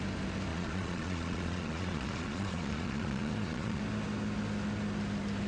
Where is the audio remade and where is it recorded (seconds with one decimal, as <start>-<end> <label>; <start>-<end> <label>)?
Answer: 0.0-0.5 recorded; 0.5-3.8 remade; 3.8-5.5 recorded